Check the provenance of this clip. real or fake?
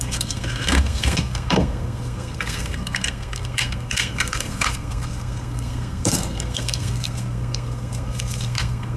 fake